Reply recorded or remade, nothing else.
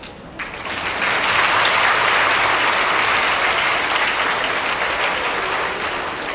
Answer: recorded